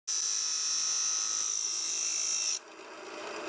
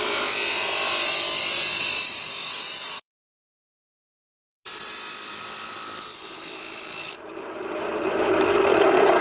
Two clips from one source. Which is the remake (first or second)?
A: second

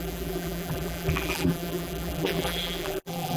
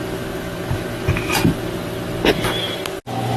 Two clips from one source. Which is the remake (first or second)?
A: first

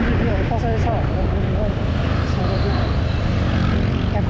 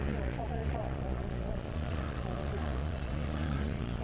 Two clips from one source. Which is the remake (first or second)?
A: second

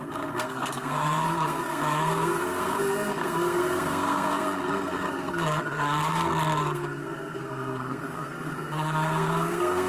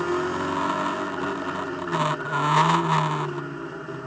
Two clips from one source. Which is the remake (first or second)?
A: first